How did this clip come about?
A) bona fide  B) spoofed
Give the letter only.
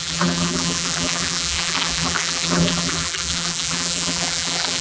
B